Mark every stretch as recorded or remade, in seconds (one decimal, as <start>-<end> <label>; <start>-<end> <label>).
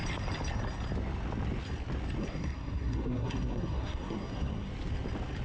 0.0-2.2 recorded; 2.2-4.7 remade; 4.7-5.4 recorded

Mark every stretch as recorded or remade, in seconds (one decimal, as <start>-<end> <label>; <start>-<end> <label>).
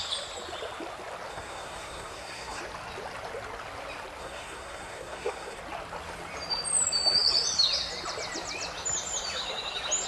0.0-1.3 recorded; 1.3-2.6 remade; 2.6-4.2 recorded; 4.2-5.6 remade; 5.6-10.1 recorded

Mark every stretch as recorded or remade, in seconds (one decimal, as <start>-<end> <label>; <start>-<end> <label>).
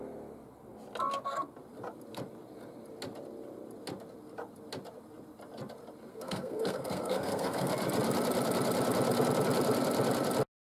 0.0-6.1 recorded; 6.1-7.7 remade; 7.7-10.8 recorded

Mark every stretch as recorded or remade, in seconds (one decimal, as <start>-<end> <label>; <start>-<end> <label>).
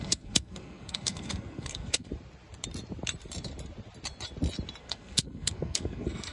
0.0-2.1 remade; 2.1-4.8 recorded; 4.8-6.3 remade